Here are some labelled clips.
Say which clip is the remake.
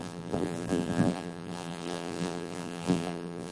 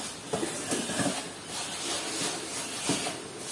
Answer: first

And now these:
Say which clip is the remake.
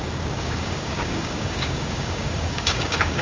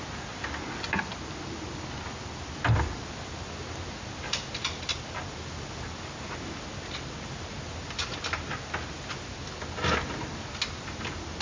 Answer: first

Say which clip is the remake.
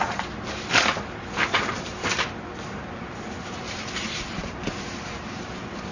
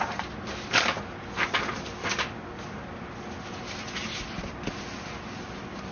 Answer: first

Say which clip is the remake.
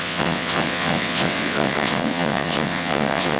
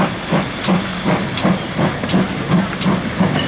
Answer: first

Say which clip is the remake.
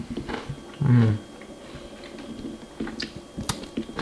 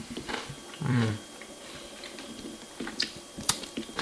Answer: second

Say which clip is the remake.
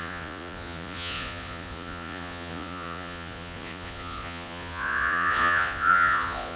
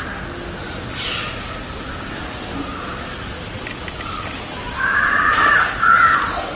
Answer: first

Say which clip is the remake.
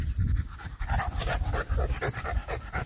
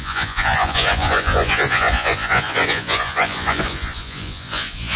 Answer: second